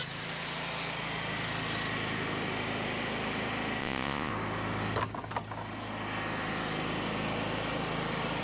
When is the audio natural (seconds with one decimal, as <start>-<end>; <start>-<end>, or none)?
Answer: 0.0-3.8; 4.3-8.4